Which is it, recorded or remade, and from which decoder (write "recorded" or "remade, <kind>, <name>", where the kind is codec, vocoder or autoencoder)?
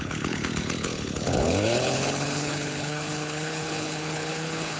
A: remade, codec, HILCodec